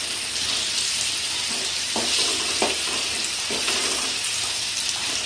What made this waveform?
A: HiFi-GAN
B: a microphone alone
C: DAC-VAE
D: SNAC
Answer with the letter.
B